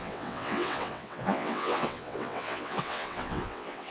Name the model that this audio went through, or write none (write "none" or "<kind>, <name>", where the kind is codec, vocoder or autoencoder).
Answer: vocoder, WaveNeXt